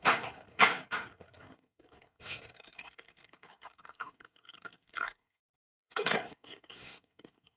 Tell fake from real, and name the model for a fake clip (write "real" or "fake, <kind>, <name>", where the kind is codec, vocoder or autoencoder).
fake, codec, SNAC